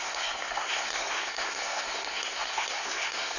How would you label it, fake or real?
fake